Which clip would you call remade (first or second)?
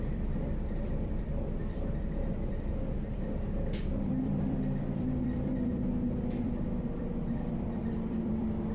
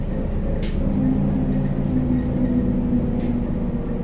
first